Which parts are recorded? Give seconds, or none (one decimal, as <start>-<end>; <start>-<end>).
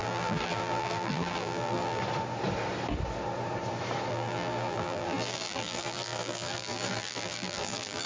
2.0-4.1